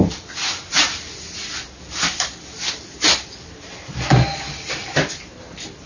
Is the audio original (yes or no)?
yes